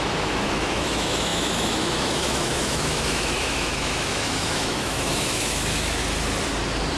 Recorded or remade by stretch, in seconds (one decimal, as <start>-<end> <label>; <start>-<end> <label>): 0.0-6.0 remade; 6.0-7.0 recorded